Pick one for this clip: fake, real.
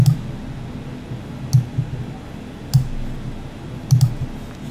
real